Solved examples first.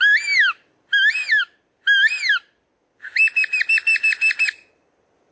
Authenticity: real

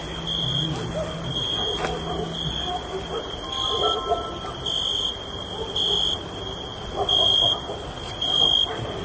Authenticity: real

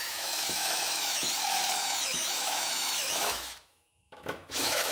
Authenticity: fake